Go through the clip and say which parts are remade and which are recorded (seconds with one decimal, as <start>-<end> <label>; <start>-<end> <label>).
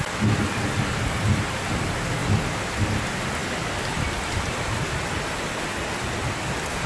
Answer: 0.0-6.9 recorded